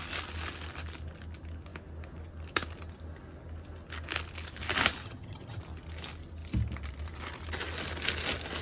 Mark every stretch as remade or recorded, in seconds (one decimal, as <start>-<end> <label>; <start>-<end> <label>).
0.0-5.0 recorded; 5.0-5.6 remade; 5.6-8.6 recorded